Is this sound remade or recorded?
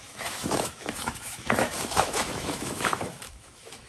remade